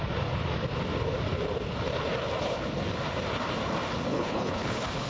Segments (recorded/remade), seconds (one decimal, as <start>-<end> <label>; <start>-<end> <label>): 0.0-4.1 recorded; 4.1-5.1 remade